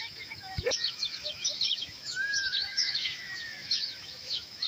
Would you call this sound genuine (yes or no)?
no